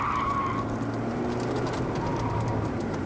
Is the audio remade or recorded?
remade